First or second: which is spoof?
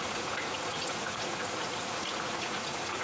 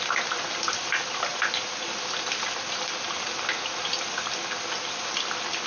first